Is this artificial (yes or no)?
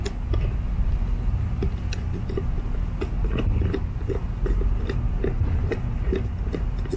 no